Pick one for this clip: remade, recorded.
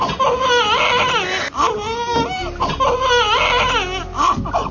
recorded